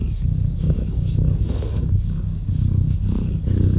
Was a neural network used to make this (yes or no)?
yes